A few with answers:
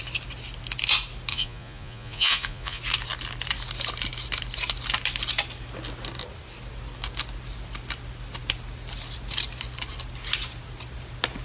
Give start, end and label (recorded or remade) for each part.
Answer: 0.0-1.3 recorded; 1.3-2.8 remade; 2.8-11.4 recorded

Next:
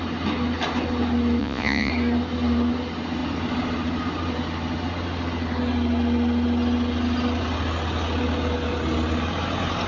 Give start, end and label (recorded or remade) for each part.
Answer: 0.0-1.4 recorded; 1.4-1.9 remade; 1.9-9.9 recorded

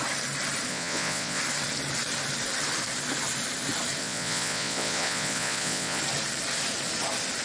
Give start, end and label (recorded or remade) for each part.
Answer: 0.0-0.7 recorded; 0.7-1.4 remade; 1.4-4.0 recorded; 4.0-6.0 remade; 6.0-7.4 recorded

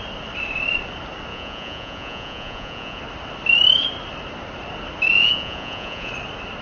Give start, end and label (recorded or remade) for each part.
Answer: 0.0-1.3 recorded; 1.3-3.0 remade; 3.0-5.1 recorded; 5.1-6.1 remade; 6.1-6.6 recorded

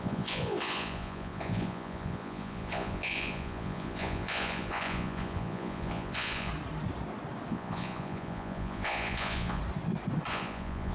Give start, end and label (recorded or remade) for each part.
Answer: 0.0-6.5 remade; 6.5-7.5 recorded; 7.5-9.6 remade; 9.6-10.3 recorded; 10.3-10.9 remade